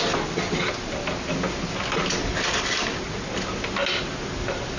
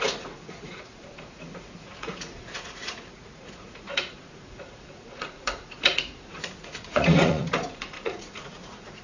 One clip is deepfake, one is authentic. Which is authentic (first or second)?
first